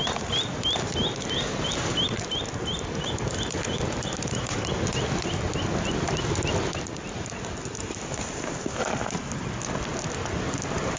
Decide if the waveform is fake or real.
real